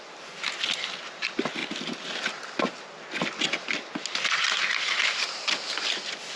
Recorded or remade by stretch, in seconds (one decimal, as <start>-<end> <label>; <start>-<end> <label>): 0.0-6.4 recorded